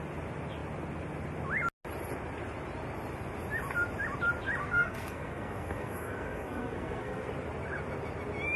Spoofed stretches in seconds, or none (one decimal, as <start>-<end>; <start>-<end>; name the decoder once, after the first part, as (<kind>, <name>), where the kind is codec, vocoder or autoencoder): 4.6-7.3 (codec, SNAC)